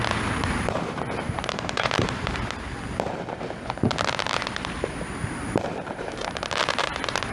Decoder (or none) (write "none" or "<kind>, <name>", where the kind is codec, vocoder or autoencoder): vocoder, BigVGAN v2